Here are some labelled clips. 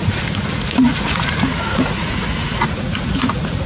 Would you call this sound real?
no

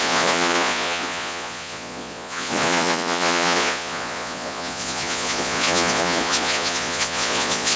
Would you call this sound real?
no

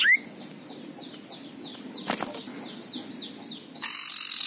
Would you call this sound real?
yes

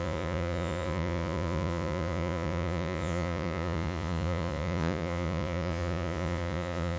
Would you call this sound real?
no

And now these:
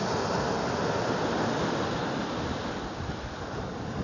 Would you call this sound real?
yes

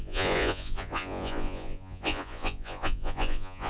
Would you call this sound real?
no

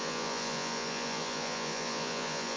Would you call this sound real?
no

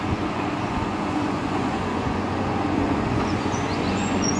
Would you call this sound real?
no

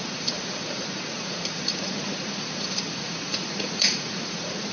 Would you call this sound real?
no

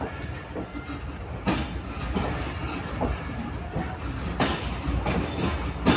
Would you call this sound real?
yes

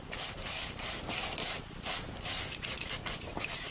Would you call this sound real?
yes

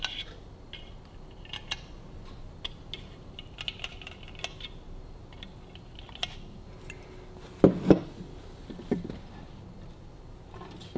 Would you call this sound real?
yes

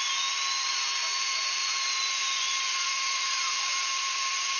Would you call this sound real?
no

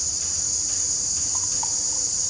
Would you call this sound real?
no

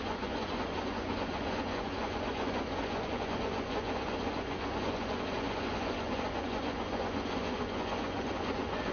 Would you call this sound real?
no